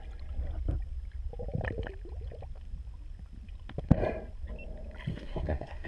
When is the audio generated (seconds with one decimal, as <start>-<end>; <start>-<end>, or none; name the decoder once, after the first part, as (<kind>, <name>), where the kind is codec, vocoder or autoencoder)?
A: 5.1-5.9 (codec, SNAC)